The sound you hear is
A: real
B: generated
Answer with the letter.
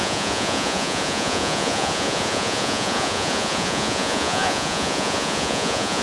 B